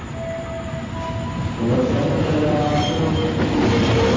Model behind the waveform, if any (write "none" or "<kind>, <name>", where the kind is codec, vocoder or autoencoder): none